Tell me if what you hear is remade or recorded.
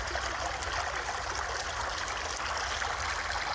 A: recorded